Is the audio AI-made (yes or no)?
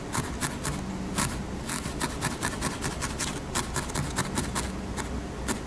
no